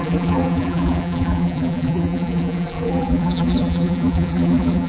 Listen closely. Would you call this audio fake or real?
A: fake